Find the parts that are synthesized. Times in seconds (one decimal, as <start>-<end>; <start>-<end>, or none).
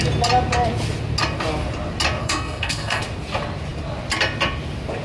2.2-3.0